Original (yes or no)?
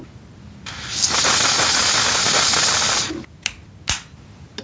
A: yes